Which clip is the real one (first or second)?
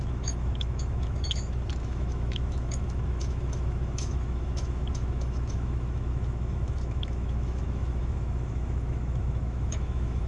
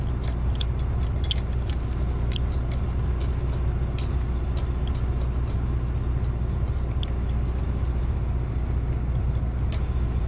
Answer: second